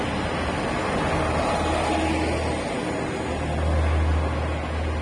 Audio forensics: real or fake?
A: real